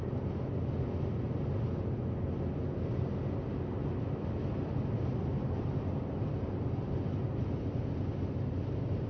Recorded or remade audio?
recorded